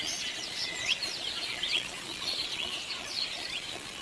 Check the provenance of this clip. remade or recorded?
remade